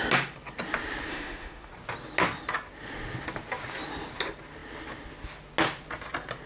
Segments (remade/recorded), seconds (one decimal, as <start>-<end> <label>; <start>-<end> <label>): 0.0-1.1 recorded; 1.1-1.7 remade; 1.7-6.5 recorded